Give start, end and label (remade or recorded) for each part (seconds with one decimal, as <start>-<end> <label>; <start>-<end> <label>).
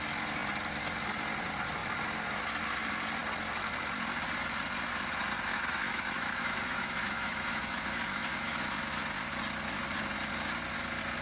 0.0-5.5 recorded; 5.5-8.7 remade; 8.7-11.2 recorded